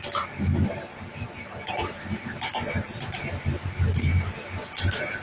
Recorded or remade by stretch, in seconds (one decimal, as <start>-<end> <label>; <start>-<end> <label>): 0.0-5.2 recorded